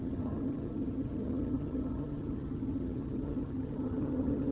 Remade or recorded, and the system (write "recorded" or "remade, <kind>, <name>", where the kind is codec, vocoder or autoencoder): remade, vocoder, HiFi-GAN